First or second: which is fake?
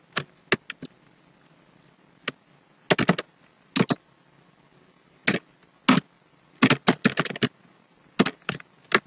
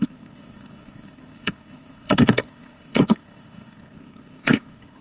second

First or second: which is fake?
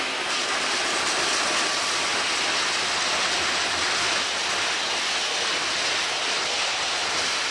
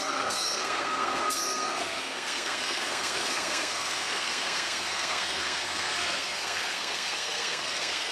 second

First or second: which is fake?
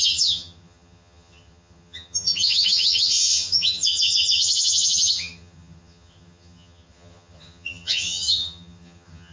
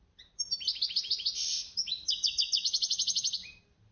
first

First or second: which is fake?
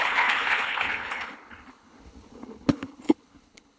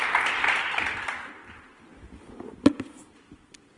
first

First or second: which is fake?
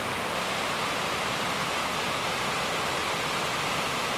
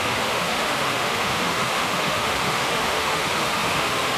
second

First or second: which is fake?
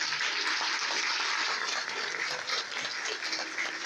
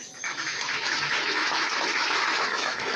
second